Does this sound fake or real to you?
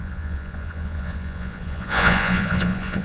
fake